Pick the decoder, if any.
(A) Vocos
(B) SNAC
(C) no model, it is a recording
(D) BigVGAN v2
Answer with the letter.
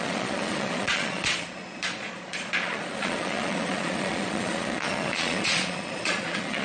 A